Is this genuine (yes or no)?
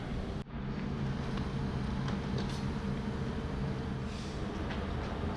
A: yes